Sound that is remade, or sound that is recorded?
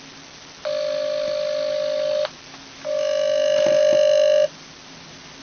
recorded